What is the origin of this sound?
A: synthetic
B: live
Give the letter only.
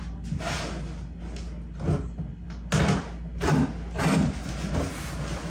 B